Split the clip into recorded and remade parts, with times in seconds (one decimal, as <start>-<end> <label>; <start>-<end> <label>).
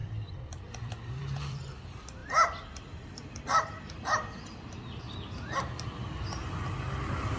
0.0-1.6 remade; 1.6-2.2 recorded; 2.2-5.0 remade; 5.0-7.4 recorded